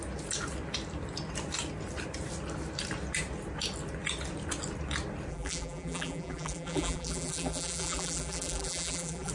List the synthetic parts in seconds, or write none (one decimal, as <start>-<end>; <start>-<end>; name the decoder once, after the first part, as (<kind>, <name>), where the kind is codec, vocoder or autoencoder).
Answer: 5.3-9.3 (vocoder, BigVGAN v2)